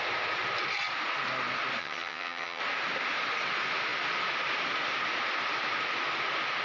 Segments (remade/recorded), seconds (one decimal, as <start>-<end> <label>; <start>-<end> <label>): 0.0-1.8 recorded; 1.8-2.6 remade; 2.6-6.6 recorded